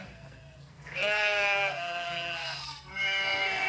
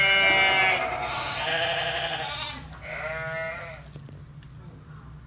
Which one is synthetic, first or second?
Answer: first